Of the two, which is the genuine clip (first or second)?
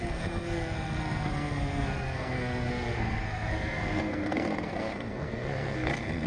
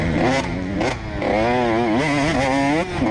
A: second